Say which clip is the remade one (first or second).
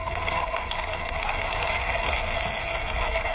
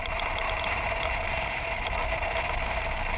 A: first